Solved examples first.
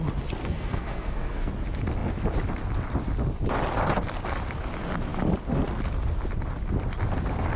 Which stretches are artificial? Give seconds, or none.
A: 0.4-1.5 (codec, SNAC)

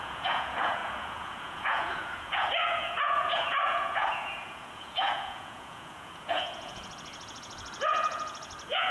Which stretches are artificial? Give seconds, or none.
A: 0.0-8.9 (vocoder, Vocos)

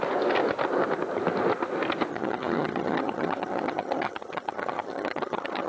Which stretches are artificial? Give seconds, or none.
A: 2.1-5.7 (vocoder, HiFi-GAN)

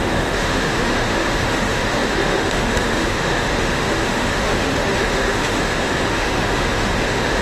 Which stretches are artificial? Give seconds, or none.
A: 0.0-7.4 (autoencoder, DAC-VAE)

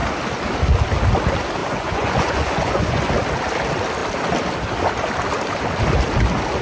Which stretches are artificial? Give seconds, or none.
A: 1.6-3.1 (vocoder, Vocos)

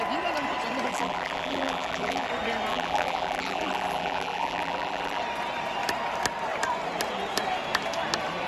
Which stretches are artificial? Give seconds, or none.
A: 0.9-2.3 (vocoder, BigVGAN v2); 2.7-5.2

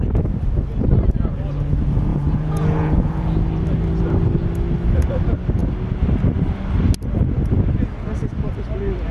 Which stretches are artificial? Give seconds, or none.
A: 2.1-3.3 (vocoder, Vocos)

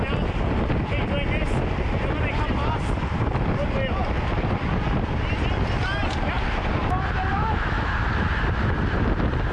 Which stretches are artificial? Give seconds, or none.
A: 7.3-7.9 (autoencoder, DAC-VAE)